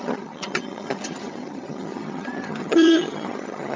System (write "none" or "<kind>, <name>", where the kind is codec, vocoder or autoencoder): vocoder, HiFi-GAN